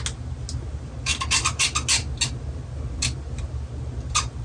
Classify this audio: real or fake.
real